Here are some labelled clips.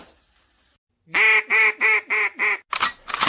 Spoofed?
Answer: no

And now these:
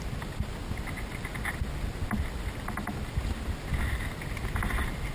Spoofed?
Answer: no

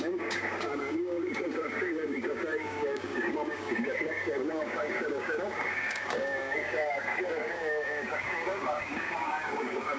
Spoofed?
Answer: yes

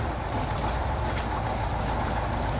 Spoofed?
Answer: no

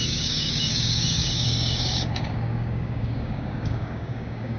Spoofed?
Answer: yes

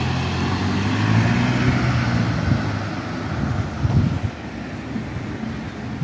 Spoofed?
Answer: no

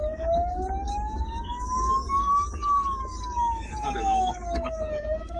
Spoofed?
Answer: yes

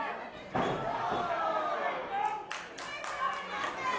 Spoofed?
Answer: no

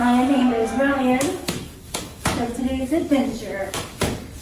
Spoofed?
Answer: yes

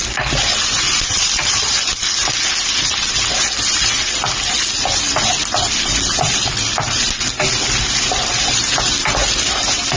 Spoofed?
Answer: no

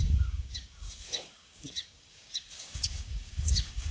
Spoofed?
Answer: yes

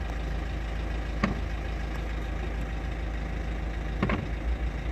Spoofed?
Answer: no